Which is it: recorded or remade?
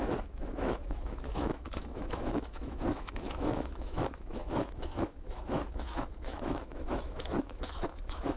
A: remade